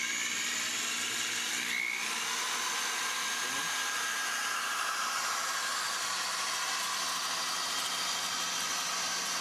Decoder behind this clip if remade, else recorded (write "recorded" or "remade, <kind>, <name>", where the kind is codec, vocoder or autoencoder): recorded